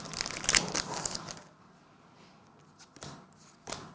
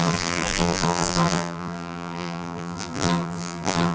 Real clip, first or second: first